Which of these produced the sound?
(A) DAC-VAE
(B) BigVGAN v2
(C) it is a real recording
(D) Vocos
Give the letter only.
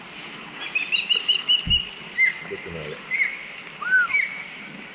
C